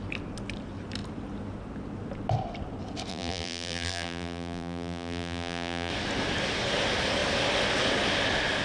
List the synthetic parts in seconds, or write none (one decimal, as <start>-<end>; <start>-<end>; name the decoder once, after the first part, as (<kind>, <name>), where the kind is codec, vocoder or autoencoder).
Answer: 3.1-5.9 (vocoder, BigVGAN v2)